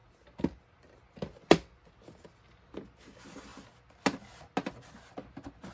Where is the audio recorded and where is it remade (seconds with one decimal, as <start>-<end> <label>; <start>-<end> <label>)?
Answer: 0.0-5.7 recorded